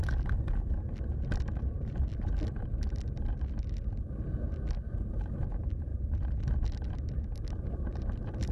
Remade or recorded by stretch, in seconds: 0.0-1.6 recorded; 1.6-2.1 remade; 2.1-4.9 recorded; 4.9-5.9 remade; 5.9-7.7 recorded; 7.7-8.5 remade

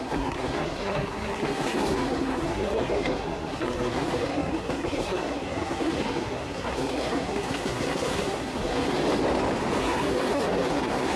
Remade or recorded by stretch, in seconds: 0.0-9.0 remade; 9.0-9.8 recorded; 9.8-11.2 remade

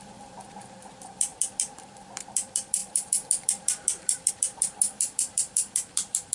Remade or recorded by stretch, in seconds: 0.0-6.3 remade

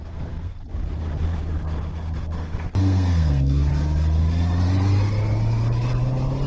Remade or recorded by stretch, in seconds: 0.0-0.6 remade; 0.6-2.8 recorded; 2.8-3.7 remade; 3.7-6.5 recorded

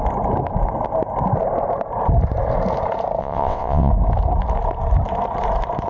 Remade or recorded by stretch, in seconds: 0.0-3.2 recorded; 3.2-3.9 remade; 3.9-5.9 recorded

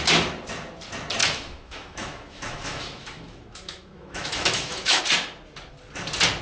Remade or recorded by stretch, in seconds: 0.0-1.2 recorded; 1.2-5.0 remade; 5.0-6.4 recorded

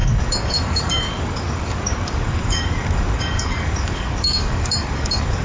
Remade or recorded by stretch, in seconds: 0.0-5.4 remade

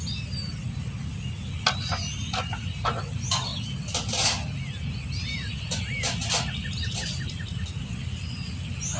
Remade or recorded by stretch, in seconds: 0.0-9.0 recorded